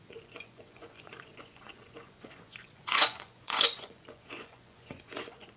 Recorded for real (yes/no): no